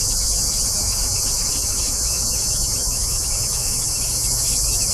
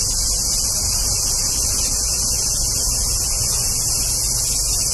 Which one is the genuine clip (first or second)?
second